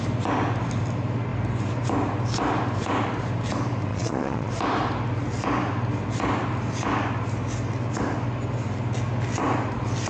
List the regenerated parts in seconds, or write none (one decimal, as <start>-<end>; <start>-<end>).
3.9-4.5